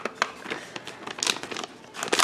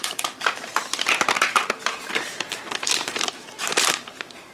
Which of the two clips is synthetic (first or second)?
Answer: second